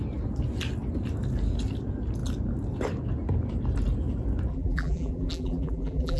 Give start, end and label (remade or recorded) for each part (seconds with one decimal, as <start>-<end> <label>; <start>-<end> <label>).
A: 0.0-4.5 recorded; 4.5-6.2 remade